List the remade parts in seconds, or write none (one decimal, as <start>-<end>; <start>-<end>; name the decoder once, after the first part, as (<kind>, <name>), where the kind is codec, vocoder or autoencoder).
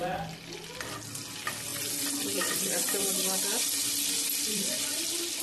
none